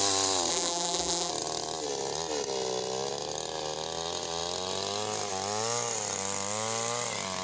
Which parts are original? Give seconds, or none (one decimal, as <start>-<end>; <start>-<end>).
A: 0.0-0.5; 1.3-7.4